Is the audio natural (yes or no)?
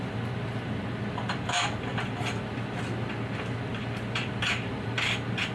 yes